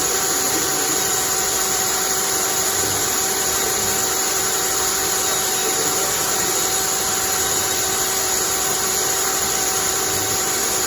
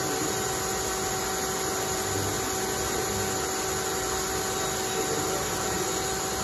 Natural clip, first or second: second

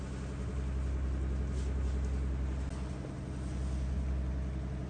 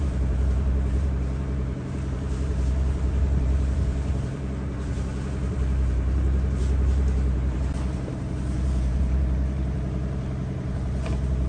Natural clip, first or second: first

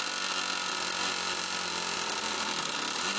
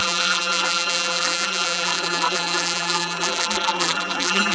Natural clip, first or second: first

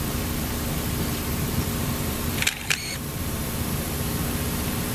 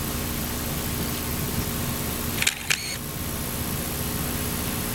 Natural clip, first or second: second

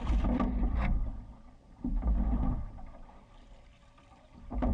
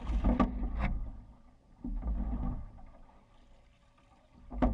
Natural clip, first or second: second